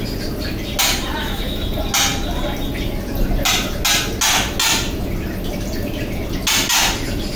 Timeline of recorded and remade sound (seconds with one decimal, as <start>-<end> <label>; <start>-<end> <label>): 0.0-1.2 recorded; 1.2-1.7 remade; 1.7-7.4 recorded